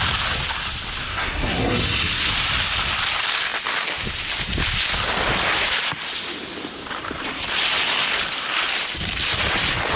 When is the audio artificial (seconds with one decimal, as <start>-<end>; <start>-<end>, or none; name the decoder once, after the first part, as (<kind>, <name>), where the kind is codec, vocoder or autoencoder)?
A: 1.0-2.3 (codec, SNAC)